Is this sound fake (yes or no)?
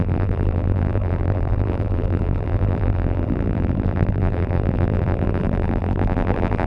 yes